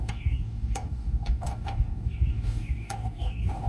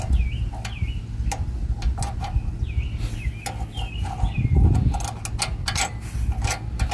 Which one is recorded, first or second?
second